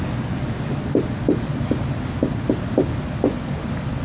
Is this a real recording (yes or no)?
yes